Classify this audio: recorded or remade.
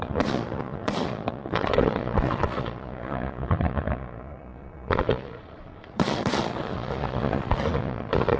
remade